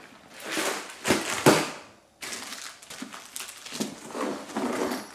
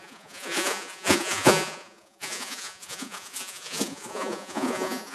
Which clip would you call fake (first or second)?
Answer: second